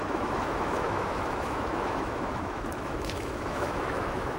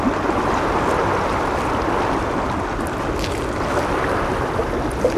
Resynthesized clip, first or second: first